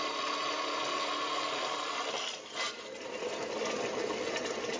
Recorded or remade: recorded